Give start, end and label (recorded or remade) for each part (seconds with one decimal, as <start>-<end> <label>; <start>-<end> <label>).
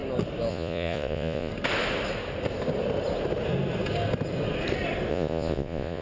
0.0-0.5 recorded; 0.5-1.5 remade; 1.5-5.1 recorded; 5.1-6.0 remade